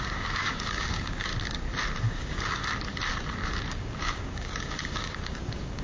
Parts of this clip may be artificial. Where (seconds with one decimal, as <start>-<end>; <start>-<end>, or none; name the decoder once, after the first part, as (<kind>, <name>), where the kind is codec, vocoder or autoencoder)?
0.0-1.3 (codec, DAC); 2.0-2.6; 3.7-5.8

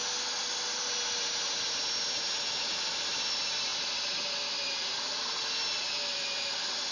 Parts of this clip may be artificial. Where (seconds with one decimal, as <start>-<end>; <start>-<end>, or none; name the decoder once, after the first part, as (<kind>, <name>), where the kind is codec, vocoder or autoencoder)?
none

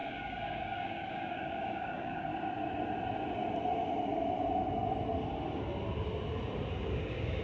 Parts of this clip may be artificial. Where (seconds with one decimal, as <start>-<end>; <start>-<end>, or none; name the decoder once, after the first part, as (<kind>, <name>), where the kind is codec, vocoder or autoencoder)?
0.0-2.3 (codec, DAC); 6.7-7.4

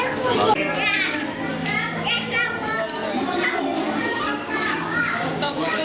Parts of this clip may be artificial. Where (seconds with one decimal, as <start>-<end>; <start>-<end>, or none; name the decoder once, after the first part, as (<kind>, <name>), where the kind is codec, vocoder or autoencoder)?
4.0-5.8 (codec, DAC)

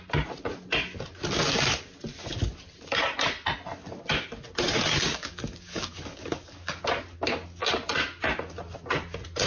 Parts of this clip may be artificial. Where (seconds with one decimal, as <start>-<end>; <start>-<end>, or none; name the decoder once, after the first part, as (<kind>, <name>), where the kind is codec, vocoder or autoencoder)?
5.0-6.8 (codec, DAC)

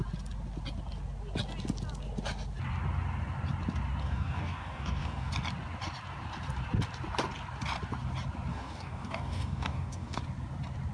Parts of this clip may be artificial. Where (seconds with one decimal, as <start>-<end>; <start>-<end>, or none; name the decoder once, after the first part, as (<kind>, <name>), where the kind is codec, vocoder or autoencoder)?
4.0-5.3 (codec, DAC); 8.5-10.2

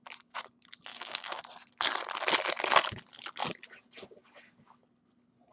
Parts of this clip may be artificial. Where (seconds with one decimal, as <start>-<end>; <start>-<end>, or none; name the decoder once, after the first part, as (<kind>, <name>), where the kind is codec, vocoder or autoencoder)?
0.9-1.4 (codec, DAC)